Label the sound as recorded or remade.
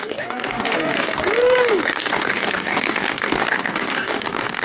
remade